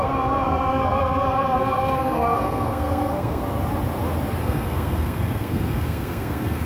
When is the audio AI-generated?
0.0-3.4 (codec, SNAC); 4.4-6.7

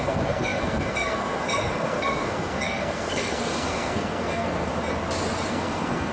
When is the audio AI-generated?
0.0-4.7 (codec, SNAC); 5.5-6.1